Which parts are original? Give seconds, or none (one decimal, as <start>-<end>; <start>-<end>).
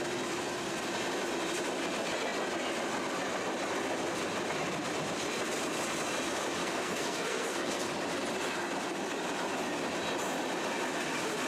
0.0-6.6; 7.9-11.5